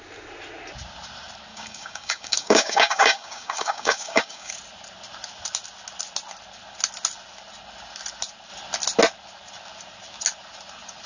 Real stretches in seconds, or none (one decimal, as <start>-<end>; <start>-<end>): 0.0-1.5; 4.5-11.1